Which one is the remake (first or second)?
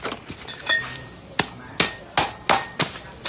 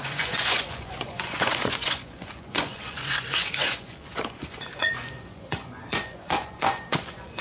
second